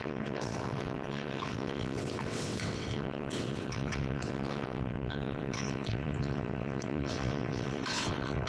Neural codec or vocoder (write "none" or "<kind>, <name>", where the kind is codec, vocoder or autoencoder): vocoder, WaveNeXt